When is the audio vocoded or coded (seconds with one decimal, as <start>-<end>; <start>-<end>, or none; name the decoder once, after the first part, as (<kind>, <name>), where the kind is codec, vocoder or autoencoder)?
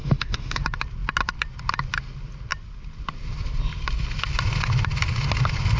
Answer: 0.0-0.6 (autoencoder, DAC-VAE)